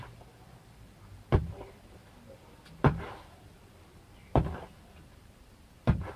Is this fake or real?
fake